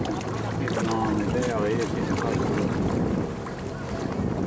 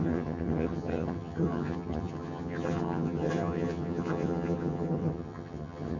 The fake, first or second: second